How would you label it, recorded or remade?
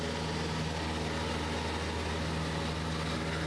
recorded